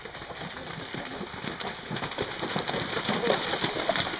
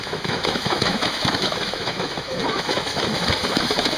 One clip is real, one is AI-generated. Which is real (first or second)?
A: first